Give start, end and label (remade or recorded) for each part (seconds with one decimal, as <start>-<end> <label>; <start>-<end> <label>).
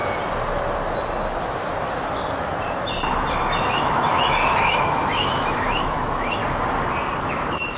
0.0-3.6 recorded; 3.6-6.4 remade; 6.4-7.2 recorded; 7.2-7.8 remade